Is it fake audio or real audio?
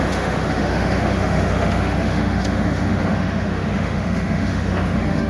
fake